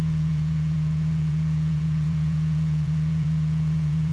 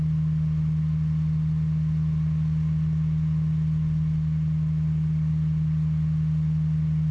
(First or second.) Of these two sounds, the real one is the second